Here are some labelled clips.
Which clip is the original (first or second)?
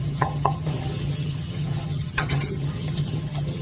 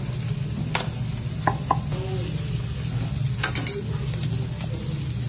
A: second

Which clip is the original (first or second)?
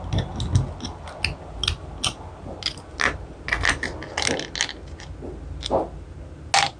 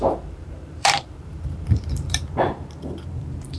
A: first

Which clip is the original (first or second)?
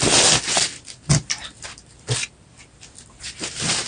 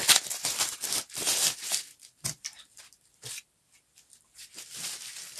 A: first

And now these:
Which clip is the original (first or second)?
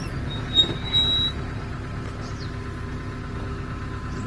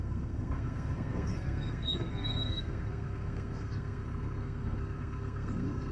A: first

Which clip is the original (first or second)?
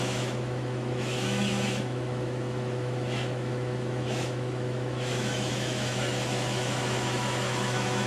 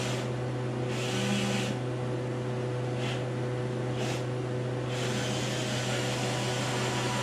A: second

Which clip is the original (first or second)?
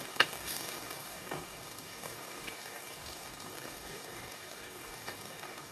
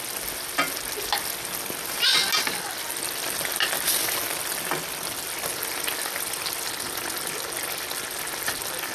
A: second